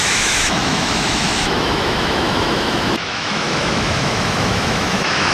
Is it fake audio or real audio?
fake